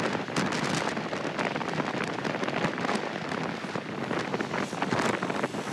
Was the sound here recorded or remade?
recorded